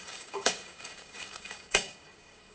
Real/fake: fake